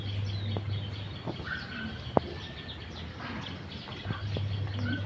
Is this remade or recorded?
recorded